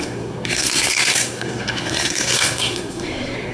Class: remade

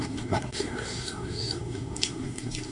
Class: remade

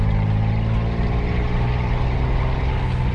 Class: recorded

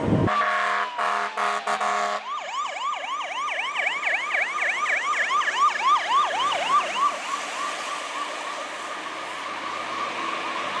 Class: recorded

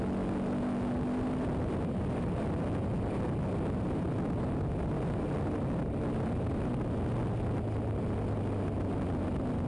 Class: recorded